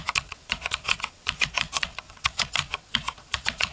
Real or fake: fake